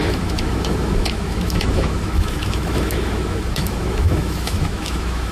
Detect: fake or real fake